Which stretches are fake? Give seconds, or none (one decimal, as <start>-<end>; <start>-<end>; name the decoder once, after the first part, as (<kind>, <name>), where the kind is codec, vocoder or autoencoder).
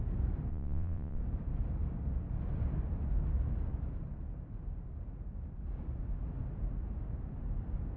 0.5-1.2 (vocoder, WaveNeXt)